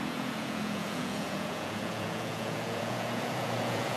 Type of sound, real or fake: fake